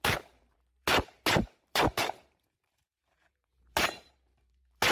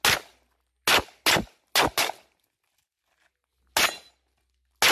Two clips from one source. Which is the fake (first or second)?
first